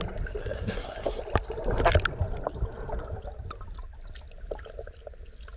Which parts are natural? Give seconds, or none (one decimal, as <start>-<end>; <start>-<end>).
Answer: 0.0-0.4; 1.2-5.6